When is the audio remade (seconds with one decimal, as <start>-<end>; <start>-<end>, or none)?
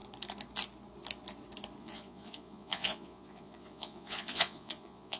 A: 1.8-5.2